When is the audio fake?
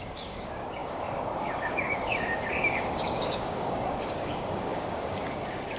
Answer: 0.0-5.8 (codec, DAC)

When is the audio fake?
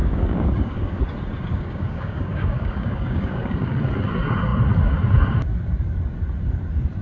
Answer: 0.0-1.0 (codec, DAC); 1.5-3.7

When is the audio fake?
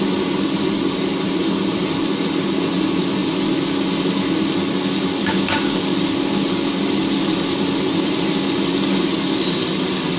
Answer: 5.2-5.8 (codec, DAC)